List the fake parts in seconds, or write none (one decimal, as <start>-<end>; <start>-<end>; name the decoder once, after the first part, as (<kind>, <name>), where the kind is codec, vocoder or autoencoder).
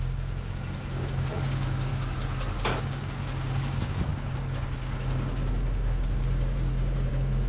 0.0-1.9 (codec, DAC); 2.8-7.5